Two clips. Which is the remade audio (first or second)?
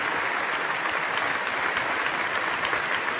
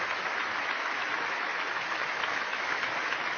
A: second